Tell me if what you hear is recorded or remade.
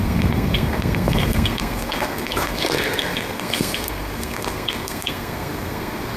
remade